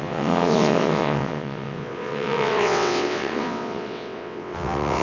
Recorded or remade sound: remade